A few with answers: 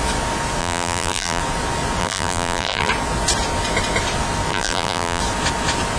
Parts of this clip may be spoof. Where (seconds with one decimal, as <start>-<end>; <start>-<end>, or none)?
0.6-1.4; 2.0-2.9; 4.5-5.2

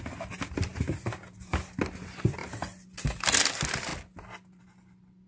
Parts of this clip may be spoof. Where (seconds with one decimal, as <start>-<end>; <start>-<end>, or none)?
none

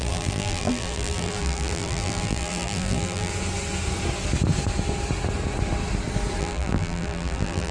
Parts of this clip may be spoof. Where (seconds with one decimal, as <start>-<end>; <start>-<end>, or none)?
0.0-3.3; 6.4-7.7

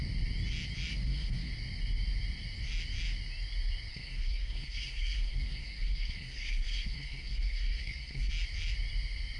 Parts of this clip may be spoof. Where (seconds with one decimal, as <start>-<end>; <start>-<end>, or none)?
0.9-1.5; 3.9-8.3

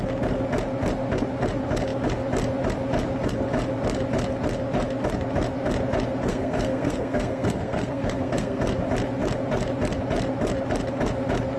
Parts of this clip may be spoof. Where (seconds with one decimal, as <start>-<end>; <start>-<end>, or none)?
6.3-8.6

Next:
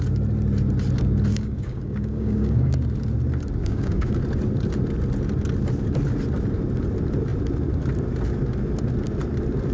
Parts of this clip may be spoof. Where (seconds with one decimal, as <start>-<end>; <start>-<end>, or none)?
1.3-2.7; 3.6-4.1